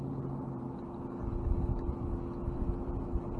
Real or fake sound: real